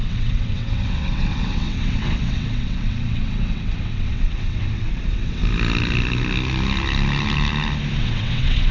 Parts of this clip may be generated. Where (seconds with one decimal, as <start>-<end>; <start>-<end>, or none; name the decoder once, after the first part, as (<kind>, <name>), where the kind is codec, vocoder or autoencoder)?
0.0-5.4 (vocoder, WaveNeXt); 8.0-8.7